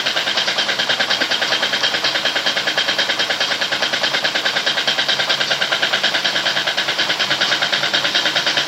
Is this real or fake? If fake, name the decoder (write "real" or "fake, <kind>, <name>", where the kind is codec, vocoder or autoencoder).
real